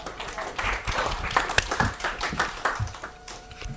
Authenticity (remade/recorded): remade